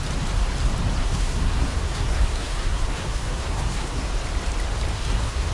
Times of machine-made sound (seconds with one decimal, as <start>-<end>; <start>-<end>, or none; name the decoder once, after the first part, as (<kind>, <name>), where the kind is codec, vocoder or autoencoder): 1.0-4.1 (codec, SNAC); 4.9-5.5